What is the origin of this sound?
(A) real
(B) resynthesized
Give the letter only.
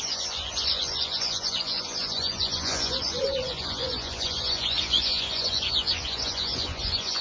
B